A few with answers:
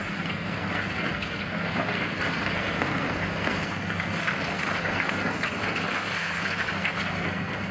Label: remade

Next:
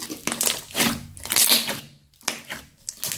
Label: recorded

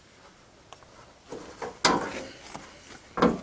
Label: recorded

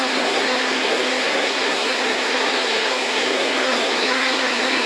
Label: remade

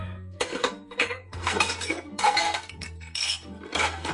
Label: remade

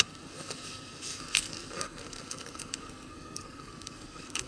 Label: remade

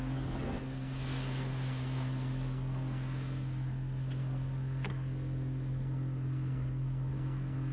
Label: remade